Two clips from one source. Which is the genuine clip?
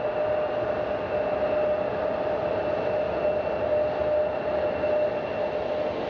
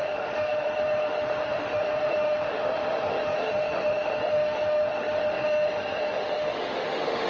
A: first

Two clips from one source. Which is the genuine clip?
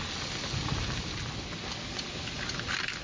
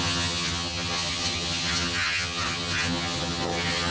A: first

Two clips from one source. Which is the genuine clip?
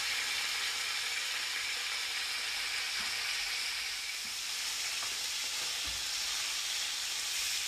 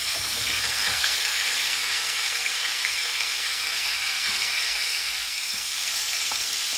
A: first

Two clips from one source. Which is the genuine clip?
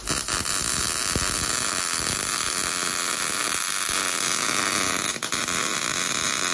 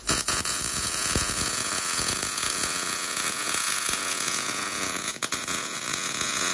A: first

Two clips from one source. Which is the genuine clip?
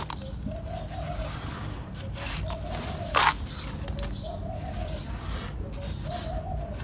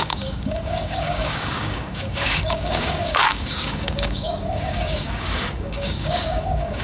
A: first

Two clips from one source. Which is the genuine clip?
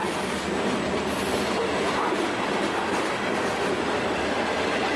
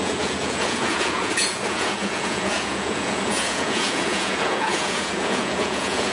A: first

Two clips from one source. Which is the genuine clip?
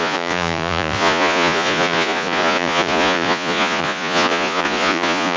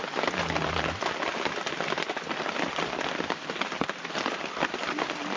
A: second